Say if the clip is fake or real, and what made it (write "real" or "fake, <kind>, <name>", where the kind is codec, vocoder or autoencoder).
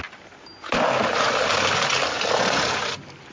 real